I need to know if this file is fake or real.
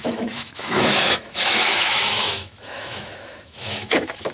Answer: fake